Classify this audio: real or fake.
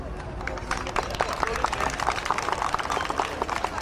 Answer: real